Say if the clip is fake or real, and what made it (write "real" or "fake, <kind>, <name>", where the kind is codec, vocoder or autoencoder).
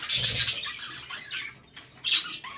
real